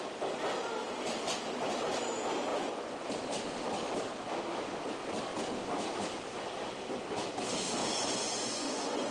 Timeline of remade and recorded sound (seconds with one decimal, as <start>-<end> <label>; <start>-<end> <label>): 0.0-2.5 recorded; 2.5-3.0 remade; 3.0-7.8 recorded; 7.8-9.1 remade